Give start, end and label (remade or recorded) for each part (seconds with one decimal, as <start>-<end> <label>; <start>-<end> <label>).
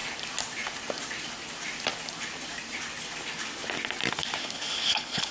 0.0-4.4 recorded; 4.4-5.3 remade